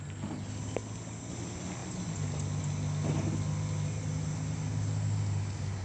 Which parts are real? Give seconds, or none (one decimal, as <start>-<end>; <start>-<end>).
0.0-5.8